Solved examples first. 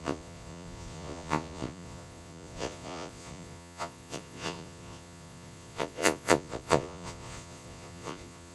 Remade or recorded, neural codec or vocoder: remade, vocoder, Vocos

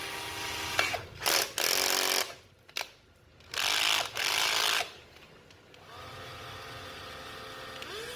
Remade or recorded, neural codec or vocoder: recorded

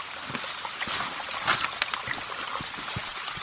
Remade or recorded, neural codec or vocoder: recorded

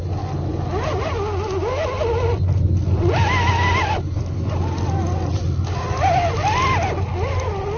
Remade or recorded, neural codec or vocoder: recorded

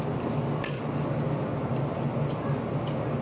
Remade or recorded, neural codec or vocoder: recorded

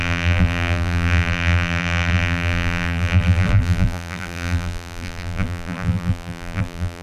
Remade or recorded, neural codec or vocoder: remade, vocoder, BigVGAN v2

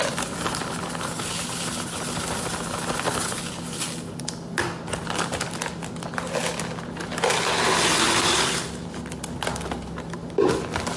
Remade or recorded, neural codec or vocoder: recorded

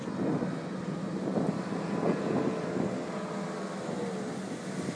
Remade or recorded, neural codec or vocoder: recorded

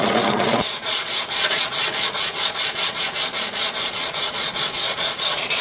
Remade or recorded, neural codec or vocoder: remade, vocoder, Vocos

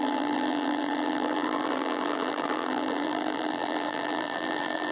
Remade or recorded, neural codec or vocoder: remade, vocoder, BigVGAN v2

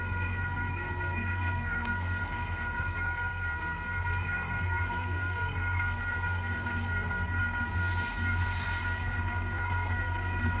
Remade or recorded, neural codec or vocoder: remade, codec, SNAC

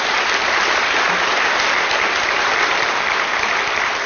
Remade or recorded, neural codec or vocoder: recorded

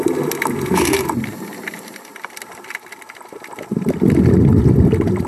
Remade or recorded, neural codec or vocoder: recorded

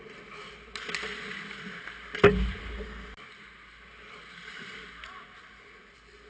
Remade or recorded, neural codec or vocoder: recorded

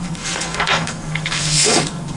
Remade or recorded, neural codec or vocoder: remade, codec, SNAC